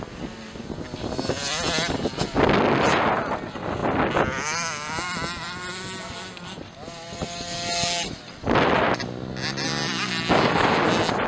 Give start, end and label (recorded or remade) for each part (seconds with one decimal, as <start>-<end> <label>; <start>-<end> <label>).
0.0-11.3 recorded

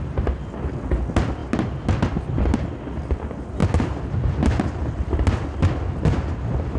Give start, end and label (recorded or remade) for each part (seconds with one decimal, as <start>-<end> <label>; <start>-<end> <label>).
0.0-6.8 recorded

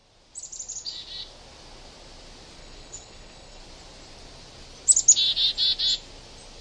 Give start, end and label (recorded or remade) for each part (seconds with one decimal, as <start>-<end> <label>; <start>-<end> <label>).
0.0-2.6 recorded; 2.6-3.6 remade; 3.6-6.6 recorded

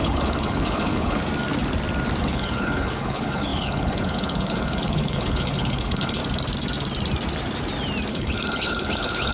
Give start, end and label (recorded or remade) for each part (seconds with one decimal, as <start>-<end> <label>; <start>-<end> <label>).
0.0-1.2 remade; 1.2-2.2 recorded; 2.2-6.2 remade; 6.2-8.1 recorded; 8.1-9.3 remade

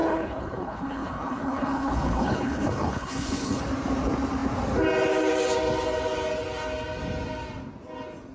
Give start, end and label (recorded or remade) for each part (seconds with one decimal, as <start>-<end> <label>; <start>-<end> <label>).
0.0-3.6 remade; 3.6-8.3 recorded

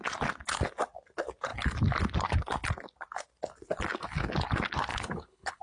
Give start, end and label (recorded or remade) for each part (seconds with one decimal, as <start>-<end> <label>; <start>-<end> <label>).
0.0-4.9 recorded; 4.9-5.6 remade

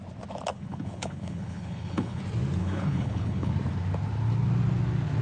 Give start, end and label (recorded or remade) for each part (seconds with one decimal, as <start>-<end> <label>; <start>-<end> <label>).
0.0-0.5 recorded; 0.5-2.2 remade; 2.2-2.6 recorded; 2.6-3.5 remade; 3.5-5.2 recorded